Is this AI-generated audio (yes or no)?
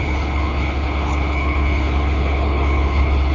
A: yes